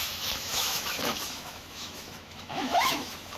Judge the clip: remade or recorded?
remade